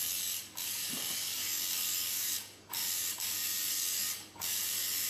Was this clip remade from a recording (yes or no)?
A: yes